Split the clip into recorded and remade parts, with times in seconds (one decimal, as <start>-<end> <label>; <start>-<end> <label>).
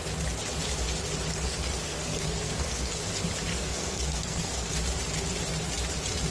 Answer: 0.0-1.3 recorded; 1.3-3.0 remade; 3.0-3.5 recorded; 3.5-4.7 remade; 4.7-6.3 recorded